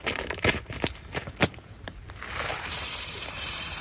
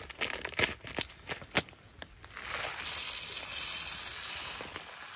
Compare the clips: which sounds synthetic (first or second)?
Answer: first